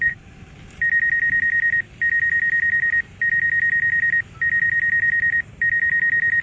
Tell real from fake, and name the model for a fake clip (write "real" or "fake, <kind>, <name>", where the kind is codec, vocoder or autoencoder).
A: real